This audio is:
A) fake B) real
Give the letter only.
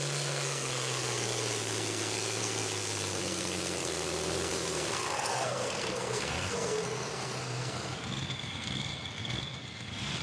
A